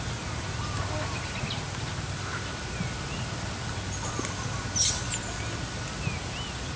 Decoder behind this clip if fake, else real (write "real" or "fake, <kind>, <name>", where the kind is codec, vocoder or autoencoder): real